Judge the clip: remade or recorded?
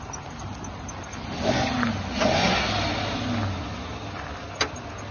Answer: recorded